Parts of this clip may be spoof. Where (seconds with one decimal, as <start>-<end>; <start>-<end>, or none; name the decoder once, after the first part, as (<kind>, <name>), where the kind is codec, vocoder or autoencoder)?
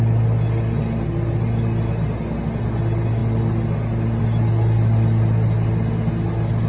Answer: none